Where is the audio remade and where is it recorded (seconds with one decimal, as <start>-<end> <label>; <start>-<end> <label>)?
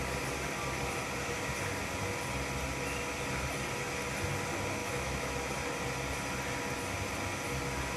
0.0-4.8 recorded; 4.8-5.5 remade; 5.5-8.0 recorded